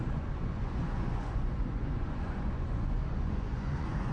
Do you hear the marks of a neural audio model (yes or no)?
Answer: yes